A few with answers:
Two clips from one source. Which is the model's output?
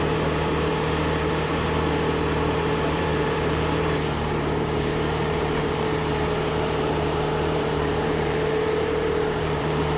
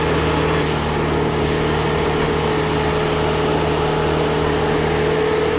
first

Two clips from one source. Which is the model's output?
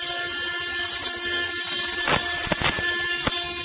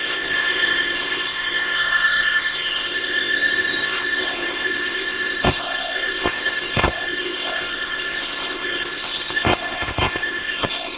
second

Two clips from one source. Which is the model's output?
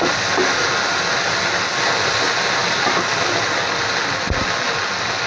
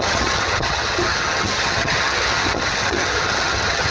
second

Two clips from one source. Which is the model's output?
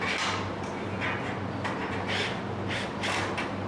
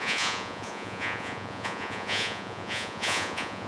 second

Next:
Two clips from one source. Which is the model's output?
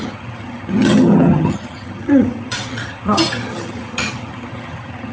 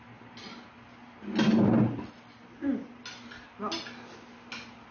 first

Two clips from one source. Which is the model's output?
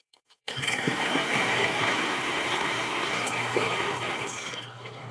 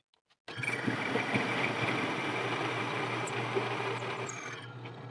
first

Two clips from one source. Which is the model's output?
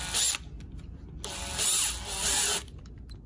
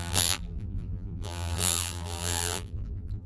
second